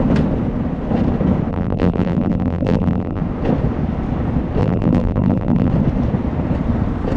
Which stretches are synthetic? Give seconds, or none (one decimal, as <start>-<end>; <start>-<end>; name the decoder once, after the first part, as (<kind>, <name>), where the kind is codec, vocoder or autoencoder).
1.5-3.2 (vocoder, BigVGAN v2); 4.6-5.7